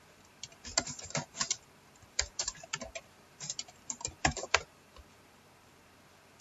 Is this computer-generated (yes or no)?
yes